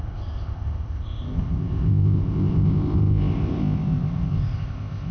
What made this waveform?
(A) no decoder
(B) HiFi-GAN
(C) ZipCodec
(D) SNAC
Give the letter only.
C